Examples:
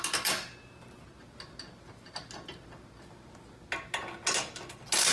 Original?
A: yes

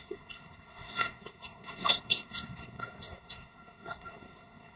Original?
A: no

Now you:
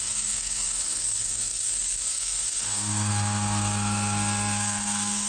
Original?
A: no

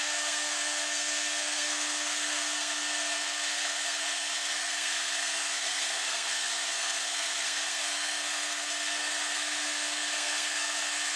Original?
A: no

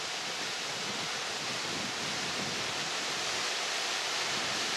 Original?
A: yes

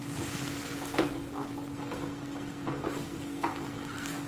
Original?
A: no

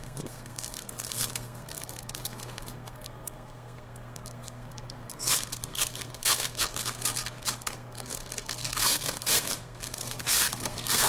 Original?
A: no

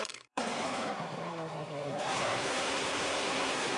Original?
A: no